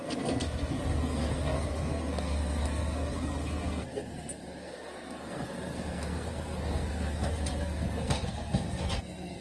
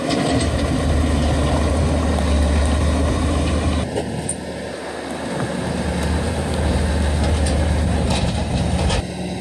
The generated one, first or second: first